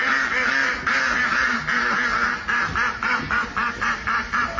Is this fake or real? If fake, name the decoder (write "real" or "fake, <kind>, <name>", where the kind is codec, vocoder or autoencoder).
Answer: real